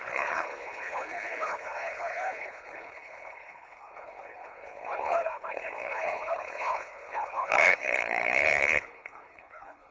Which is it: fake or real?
fake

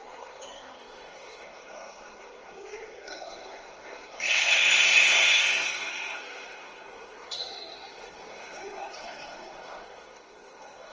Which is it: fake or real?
fake